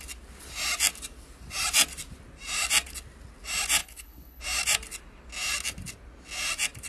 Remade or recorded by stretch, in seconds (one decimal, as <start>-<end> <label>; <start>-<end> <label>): 0.0-3.8 recorded; 3.8-4.4 remade; 4.4-6.9 recorded